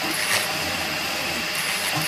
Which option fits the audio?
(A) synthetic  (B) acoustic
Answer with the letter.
B